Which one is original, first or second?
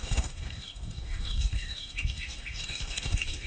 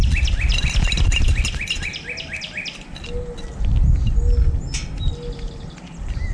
second